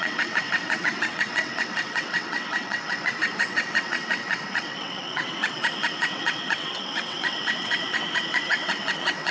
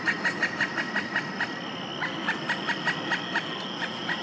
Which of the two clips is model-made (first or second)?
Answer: first